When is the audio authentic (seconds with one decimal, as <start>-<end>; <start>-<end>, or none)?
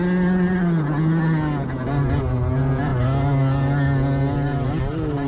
0.0-5.3